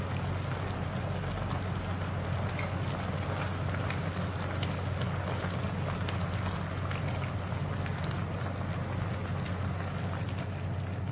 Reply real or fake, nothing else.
real